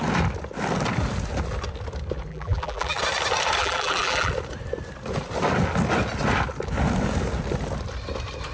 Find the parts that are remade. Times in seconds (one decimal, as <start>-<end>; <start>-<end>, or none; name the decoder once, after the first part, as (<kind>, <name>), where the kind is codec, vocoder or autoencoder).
2.3-3.0 (vocoder, BigVGAN v2); 3.6-4.3